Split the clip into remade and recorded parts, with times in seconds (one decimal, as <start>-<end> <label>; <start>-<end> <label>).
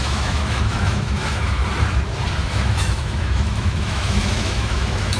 0.0-1.6 remade; 1.6-2.5 recorded; 2.5-5.2 remade